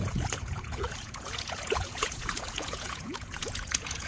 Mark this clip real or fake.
fake